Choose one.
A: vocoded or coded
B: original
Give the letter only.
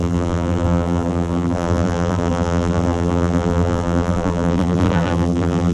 A